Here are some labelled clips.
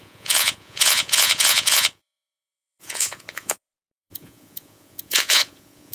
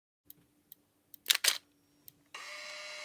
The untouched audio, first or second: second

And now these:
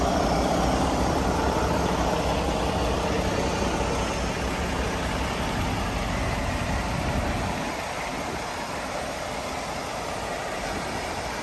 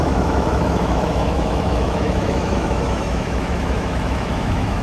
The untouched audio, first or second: first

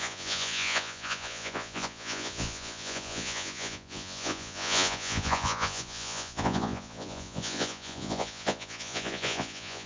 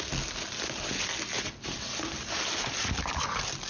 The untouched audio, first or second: second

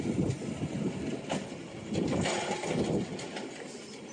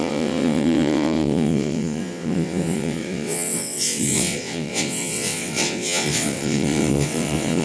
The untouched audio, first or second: first